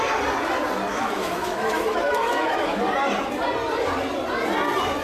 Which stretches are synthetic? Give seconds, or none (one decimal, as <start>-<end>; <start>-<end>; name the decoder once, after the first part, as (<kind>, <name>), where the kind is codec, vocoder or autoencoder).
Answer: 0.9-2.8 (autoencoder, DAC-VAE)